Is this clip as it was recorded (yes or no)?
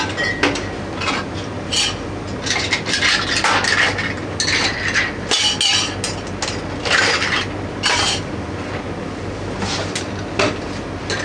yes